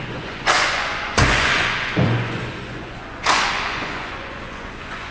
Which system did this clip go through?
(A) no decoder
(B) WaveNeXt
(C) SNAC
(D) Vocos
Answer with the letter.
D